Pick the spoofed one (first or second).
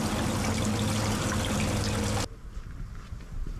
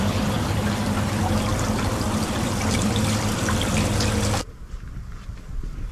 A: second